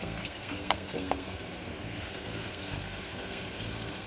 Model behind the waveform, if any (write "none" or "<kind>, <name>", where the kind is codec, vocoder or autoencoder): codec, SNAC